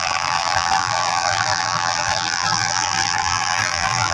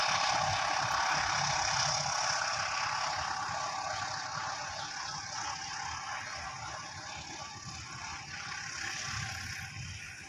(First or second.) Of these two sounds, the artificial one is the first